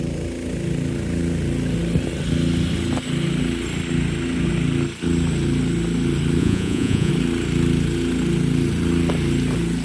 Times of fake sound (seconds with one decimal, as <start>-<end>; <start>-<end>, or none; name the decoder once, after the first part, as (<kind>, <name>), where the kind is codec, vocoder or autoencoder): 6.4-7.1 (vocoder, Vocos)

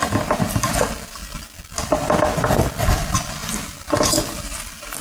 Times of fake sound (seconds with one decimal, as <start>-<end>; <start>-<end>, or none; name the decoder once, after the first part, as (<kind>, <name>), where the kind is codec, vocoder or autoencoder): none

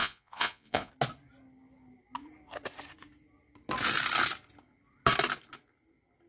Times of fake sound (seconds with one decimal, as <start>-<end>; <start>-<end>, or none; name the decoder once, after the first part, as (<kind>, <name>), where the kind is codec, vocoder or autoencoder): 0.0-0.9 (vocoder, Vocos)

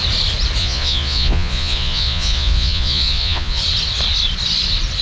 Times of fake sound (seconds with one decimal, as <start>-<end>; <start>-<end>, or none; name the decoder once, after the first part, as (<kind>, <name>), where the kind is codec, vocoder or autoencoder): 0.6-3.6 (vocoder, Vocos)

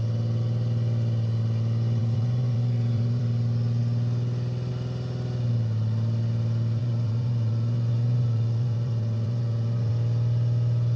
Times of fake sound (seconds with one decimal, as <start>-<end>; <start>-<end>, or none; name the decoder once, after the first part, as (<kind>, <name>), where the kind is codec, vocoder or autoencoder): 2.0-3.2 (vocoder, Vocos); 6.8-9.9